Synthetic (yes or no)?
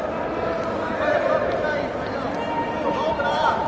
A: no